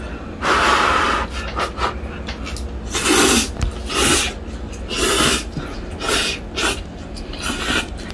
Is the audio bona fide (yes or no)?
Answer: yes